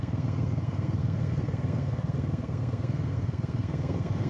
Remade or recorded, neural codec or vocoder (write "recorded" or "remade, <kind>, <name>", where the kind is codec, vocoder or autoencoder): remade, codec, SNAC